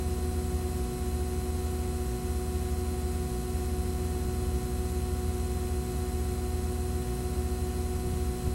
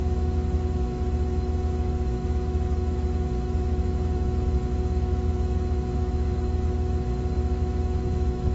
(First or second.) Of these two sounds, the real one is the first